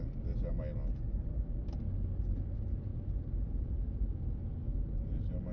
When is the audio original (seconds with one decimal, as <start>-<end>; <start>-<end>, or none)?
0.0-2.9; 4.3-5.5